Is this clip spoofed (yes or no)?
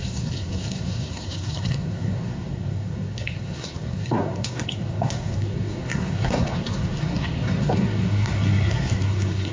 yes